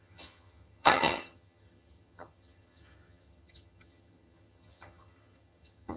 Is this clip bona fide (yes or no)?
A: no